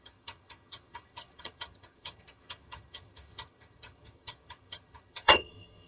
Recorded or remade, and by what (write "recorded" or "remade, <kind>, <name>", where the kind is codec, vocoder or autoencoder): remade, vocoder, HiFi-GAN